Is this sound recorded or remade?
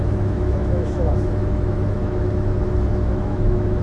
remade